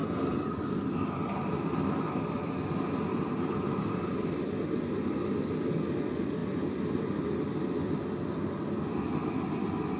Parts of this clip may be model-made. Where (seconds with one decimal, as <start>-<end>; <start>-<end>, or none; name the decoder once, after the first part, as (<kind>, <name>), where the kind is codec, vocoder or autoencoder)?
3.1-4.4 (vocoder, BigVGAN v2)